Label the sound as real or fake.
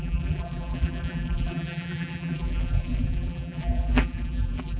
fake